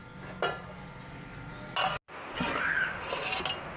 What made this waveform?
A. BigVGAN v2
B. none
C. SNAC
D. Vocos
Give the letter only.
B